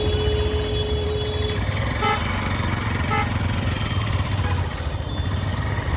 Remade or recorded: recorded